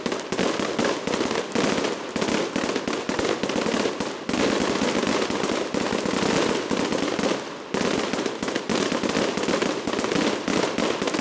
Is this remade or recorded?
recorded